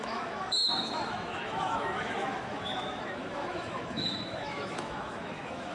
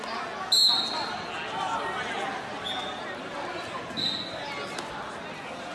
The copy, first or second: first